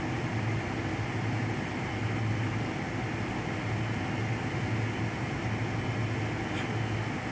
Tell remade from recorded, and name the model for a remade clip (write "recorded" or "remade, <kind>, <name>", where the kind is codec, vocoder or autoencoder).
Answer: recorded